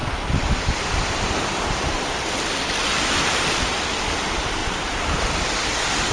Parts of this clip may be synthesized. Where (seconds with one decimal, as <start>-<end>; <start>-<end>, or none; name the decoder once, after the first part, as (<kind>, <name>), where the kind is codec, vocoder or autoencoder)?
none